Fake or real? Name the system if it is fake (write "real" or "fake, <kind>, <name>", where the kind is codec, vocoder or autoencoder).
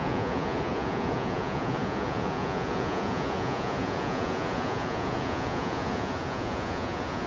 fake, vocoder, Vocos